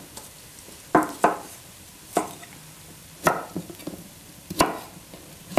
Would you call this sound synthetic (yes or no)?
no